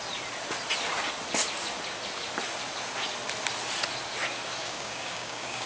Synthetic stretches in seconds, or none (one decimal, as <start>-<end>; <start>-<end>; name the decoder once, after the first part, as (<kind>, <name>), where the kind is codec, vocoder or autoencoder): 4.6-5.7 (codec, DAC)